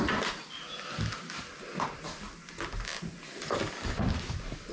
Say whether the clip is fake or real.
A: real